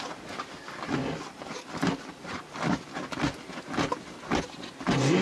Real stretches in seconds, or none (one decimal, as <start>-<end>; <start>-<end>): 0.0-5.2